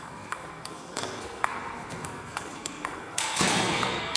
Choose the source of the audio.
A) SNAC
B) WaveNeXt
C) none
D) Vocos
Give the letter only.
A